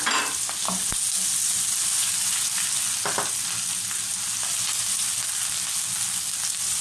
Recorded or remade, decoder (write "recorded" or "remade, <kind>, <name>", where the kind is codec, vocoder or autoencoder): recorded